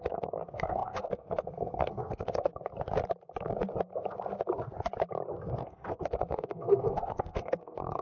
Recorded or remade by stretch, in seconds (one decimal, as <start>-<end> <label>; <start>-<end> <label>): 0.0-2.5 remade; 2.5-5.4 recorded; 5.4-8.0 remade